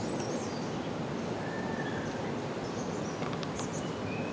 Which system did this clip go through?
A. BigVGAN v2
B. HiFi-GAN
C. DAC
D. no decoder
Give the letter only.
D